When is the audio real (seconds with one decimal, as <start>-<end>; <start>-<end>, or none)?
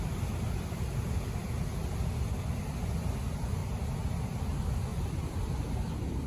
0.0-4.9; 5.4-6.3